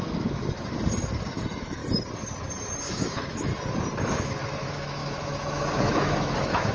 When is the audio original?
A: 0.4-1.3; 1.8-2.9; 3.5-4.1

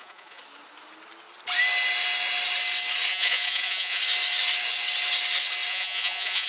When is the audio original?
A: 0.4-3.1; 4.0-5.7

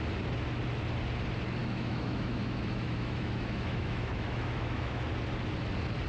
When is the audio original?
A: 0.0-1.6; 5.0-6.1